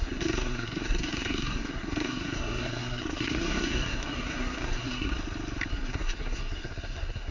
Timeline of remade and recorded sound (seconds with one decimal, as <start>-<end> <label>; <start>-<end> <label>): 0.0-5.1 remade; 5.1-5.7 recorded; 5.7-7.3 remade